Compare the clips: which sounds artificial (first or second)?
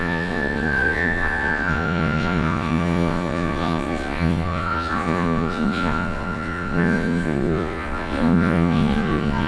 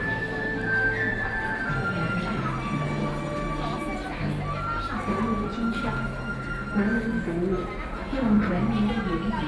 first